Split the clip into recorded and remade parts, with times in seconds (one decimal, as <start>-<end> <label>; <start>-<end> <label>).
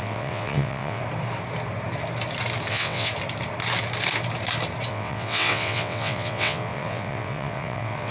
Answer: 0.0-1.0 remade; 1.0-2.7 recorded; 2.7-3.1 remade; 3.1-4.9 recorded; 4.9-8.1 remade